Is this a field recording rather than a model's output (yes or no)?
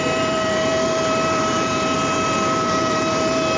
no